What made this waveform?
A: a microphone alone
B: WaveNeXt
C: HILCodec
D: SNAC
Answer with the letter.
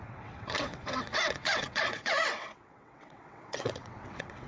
B